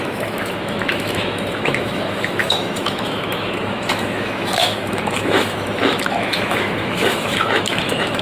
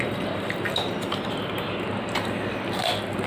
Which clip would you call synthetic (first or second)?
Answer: first